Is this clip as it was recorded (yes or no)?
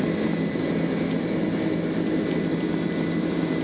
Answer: yes